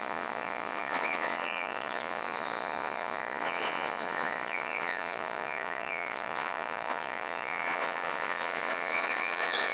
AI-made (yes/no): yes